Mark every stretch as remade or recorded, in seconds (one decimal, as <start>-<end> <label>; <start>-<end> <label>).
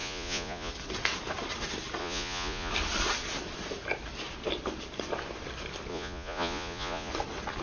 0.0-0.7 remade; 0.7-2.0 recorded; 2.0-2.7 remade; 2.7-5.9 recorded; 5.9-7.1 remade; 7.1-7.6 recorded